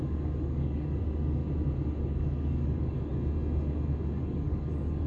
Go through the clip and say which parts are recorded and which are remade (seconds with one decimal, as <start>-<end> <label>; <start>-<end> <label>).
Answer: 0.0-1.4 remade; 1.4-2.0 recorded; 2.0-3.1 remade; 3.1-4.2 recorded; 4.2-5.1 remade

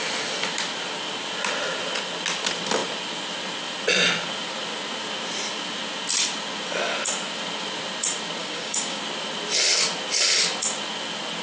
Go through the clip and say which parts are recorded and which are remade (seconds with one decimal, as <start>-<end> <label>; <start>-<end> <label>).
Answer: 0.0-8.4 recorded; 8.4-9.0 remade; 9.0-11.4 recorded

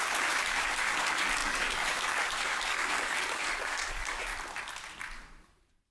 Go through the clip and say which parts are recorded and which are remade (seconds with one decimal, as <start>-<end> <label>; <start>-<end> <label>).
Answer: 0.0-4.3 remade; 4.3-5.9 recorded

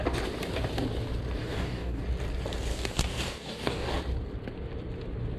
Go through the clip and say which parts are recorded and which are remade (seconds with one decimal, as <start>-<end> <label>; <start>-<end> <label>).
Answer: 0.0-1.4 recorded; 1.4-2.0 remade; 2.0-2.7 recorded; 2.7-3.9 remade; 3.9-5.4 recorded